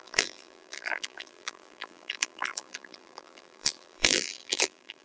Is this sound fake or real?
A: fake